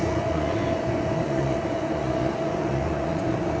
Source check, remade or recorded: remade